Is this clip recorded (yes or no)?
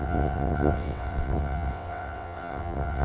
no